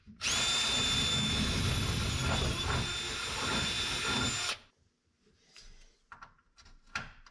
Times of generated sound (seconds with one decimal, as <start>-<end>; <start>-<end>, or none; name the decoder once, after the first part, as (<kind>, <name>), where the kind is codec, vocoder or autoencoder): 1.1-1.6 (autoencoder, DAC-VAE)